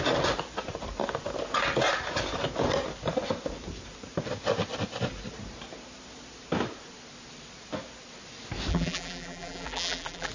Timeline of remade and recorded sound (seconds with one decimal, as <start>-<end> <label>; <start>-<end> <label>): 0.0-8.7 recorded; 8.7-10.3 remade